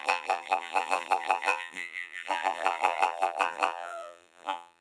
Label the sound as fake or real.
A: fake